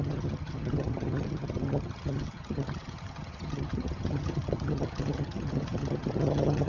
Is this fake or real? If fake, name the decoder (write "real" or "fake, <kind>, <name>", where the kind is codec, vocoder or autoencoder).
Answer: fake, vocoder, HiFi-GAN